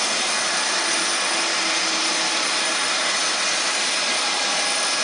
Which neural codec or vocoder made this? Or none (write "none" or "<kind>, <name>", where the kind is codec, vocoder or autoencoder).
none